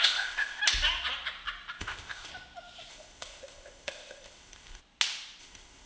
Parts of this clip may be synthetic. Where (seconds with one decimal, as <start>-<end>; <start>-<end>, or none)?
0.0-0.6; 1.8-2.3; 2.9-4.8; 5.4-5.9